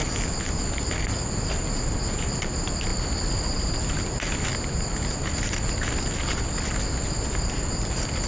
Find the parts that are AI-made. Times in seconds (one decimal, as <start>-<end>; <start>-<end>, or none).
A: none